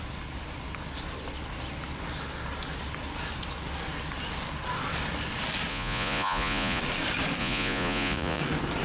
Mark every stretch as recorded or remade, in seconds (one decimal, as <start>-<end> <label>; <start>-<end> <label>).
0.0-5.7 recorded; 5.7-6.8 remade; 6.8-7.4 recorded; 7.4-8.4 remade; 8.4-8.8 recorded